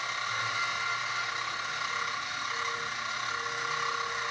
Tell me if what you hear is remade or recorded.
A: recorded